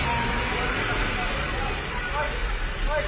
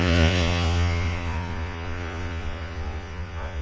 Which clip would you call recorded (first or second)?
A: first